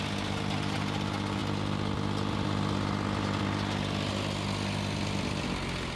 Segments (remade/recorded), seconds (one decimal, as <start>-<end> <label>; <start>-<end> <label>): 0.0-6.0 recorded